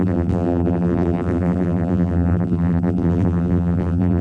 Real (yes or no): no